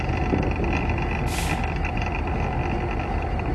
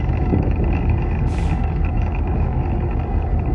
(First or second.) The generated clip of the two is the second